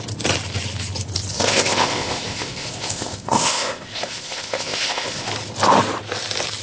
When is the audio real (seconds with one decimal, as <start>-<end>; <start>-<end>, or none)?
0.0-1.3; 5.3-6.6